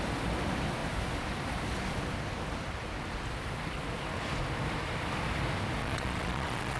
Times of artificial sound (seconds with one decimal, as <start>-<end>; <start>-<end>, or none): 5.8-6.8